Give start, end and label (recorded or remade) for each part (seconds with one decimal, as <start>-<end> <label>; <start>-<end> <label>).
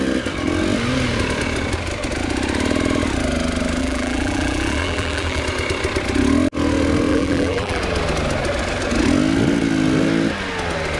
0.0-3.8 recorded; 3.8-5.4 remade; 5.4-7.1 recorded; 7.1-7.8 remade; 7.8-11.0 recorded